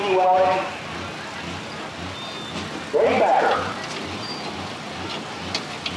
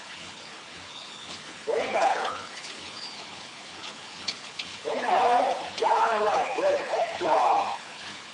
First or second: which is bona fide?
first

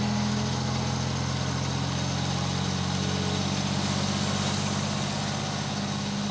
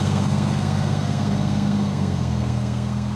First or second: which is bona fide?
first